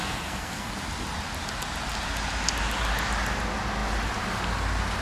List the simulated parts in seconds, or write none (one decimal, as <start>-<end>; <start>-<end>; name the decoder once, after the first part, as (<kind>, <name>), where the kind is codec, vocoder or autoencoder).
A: 0.0-0.7 (codec, SNAC)